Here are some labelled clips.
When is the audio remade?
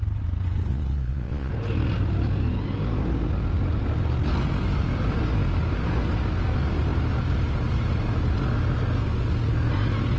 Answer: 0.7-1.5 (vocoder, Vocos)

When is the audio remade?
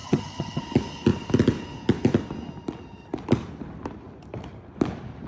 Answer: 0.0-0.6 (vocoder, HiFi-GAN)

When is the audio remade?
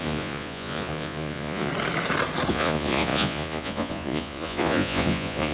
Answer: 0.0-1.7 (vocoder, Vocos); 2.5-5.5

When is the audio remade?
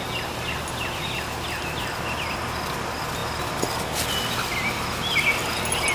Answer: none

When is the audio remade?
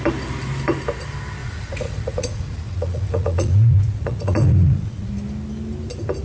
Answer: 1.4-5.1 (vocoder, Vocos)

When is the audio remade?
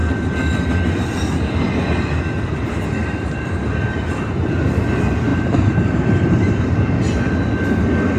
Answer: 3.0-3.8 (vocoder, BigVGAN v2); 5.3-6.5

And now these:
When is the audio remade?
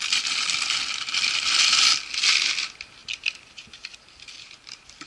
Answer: 3.0-5.1 (vocoder, BigVGAN v2)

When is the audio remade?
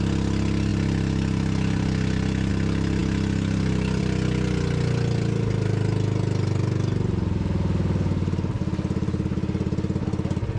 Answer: none